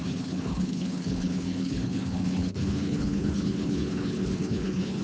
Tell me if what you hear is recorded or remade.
remade